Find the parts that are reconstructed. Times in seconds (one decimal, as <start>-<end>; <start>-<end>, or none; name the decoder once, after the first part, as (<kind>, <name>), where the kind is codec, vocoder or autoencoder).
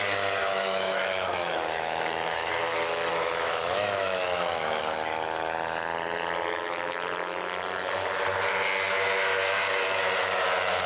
0.4-2.5 (autoencoder, DAC-VAE); 3.1-4.8